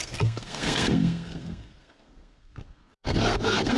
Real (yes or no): no